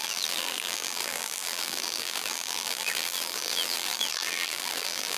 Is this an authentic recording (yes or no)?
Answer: no